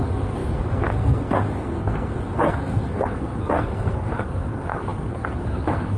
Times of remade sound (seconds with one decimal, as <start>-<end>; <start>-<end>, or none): 0.0-6.0